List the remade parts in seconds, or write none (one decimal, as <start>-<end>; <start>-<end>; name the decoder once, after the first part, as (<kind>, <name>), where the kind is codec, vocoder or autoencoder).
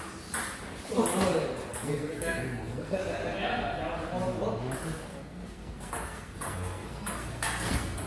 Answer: 1.7-3.0 (codec, SNAC); 5.1-8.1